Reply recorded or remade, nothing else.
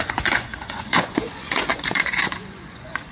remade